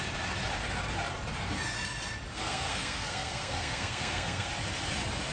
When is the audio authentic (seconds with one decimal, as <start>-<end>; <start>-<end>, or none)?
0.0-2.3; 4.5-5.3

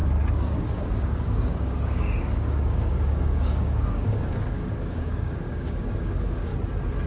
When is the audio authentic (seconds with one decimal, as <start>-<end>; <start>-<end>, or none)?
6.5-7.1